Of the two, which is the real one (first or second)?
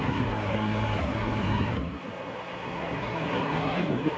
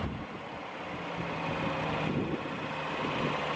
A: second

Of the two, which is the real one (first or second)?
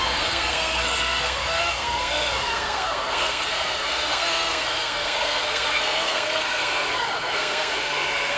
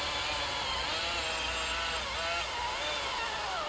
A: second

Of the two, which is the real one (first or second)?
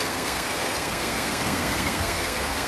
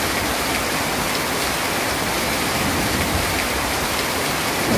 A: second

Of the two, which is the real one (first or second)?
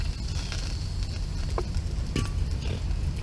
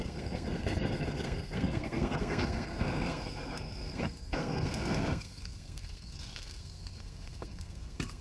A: first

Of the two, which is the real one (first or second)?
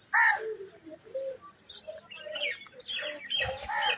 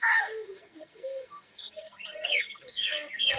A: first